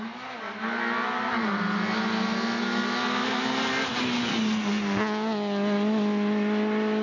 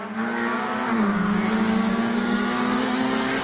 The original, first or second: first